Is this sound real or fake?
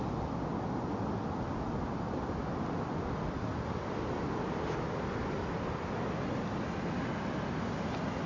real